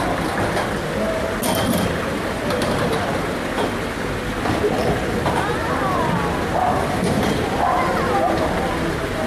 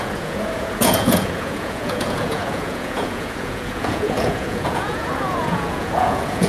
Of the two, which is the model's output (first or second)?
second